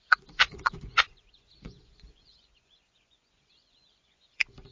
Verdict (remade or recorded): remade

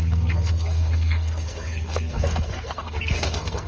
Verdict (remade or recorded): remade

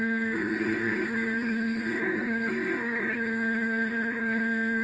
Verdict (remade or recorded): remade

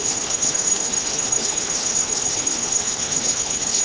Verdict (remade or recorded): remade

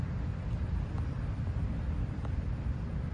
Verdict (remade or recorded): remade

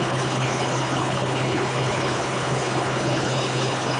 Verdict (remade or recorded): remade